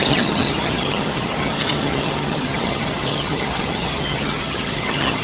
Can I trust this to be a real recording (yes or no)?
no